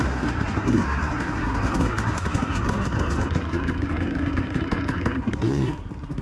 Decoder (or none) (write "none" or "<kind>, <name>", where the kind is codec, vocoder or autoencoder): codec, SNAC